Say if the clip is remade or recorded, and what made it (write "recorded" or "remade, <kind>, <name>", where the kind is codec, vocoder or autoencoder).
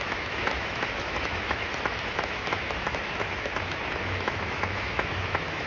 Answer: remade, autoencoder, DAC-VAE